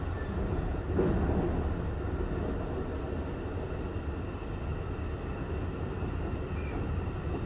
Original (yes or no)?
yes